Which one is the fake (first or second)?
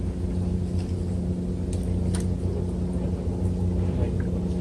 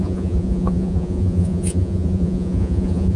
second